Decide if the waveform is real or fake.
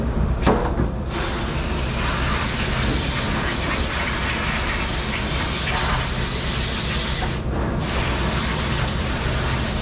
real